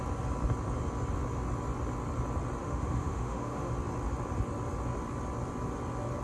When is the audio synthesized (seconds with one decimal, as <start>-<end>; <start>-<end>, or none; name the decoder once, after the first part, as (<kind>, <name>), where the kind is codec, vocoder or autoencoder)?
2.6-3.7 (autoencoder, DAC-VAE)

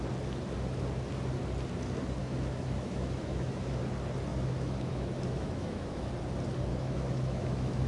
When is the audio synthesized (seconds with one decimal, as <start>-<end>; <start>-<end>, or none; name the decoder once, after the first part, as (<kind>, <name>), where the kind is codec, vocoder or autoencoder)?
2.2-3.8 (autoencoder, DAC-VAE); 4.3-6.1; 6.7-7.9

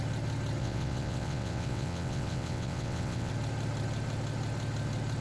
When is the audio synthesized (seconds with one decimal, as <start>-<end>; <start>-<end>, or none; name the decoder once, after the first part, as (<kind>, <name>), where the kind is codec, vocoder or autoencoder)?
0.6-3.3 (vocoder, WaveNeXt)

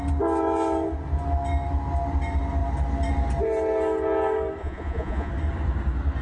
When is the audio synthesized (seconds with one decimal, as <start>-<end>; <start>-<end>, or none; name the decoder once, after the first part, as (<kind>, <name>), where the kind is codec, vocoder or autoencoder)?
4.6-5.3 (vocoder, Vocos)

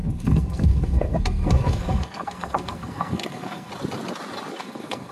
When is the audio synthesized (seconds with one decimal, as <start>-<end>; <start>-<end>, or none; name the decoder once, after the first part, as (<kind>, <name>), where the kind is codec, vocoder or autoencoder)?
0.0-3.7 (codec, SNAC); 4.6-5.1

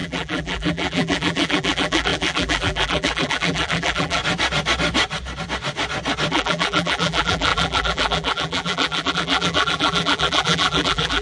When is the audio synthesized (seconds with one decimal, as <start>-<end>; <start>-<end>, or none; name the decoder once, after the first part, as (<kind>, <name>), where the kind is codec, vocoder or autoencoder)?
0.0-4.2 (vocoder, BigVGAN v2); 6.3-11.2

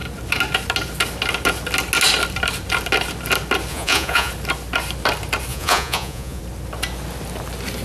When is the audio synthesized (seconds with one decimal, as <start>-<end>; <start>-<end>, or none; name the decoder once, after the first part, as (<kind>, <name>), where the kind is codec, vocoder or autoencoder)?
3.7-4.3 (vocoder, Vocos); 5.5-6.4